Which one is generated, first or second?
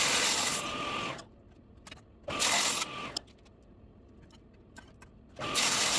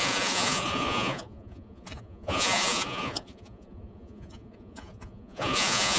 second